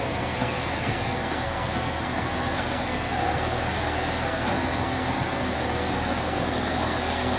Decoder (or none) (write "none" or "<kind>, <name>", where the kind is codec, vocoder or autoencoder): codec, SNAC